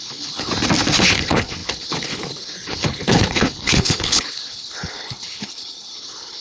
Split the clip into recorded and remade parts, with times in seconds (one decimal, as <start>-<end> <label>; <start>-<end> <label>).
0.0-0.5 remade; 0.5-1.0 recorded; 1.0-6.4 remade